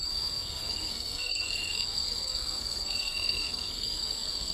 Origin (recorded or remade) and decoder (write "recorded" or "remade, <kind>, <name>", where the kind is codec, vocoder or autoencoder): remade, codec, SNAC